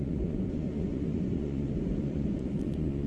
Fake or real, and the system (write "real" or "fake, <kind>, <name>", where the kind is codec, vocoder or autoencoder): fake, vocoder, Vocos